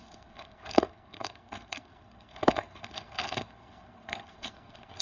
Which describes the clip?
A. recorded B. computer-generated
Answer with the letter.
B